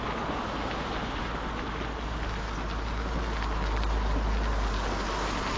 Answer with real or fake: real